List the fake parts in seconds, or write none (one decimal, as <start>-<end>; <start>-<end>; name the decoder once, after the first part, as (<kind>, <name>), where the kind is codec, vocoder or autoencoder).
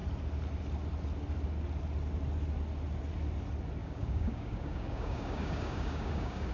3.8-6.5 (codec, DAC)